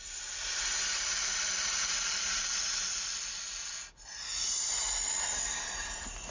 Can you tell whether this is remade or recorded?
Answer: recorded